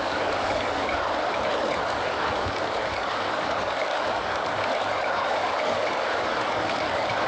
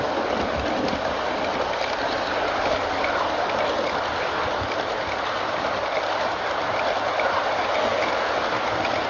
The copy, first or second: first